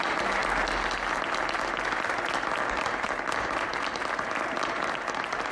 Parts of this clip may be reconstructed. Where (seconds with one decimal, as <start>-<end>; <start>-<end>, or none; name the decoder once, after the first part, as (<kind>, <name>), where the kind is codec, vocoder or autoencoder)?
none